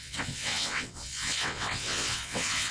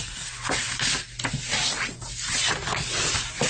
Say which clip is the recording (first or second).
second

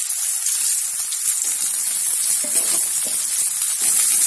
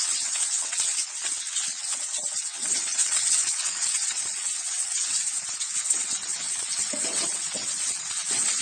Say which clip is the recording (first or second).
first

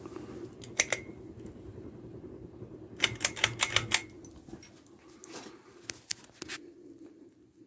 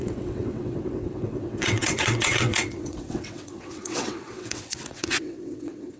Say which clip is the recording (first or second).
first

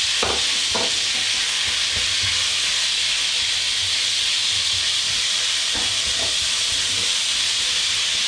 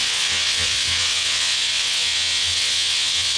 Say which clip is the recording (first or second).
first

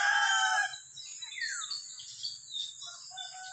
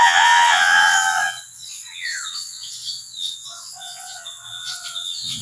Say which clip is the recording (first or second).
first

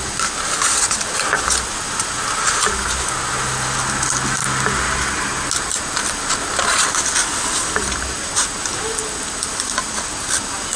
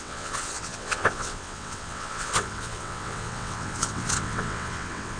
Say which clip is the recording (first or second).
first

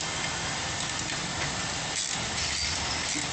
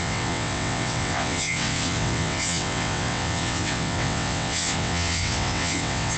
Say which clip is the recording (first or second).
first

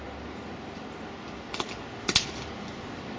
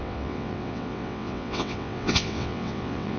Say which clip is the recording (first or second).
first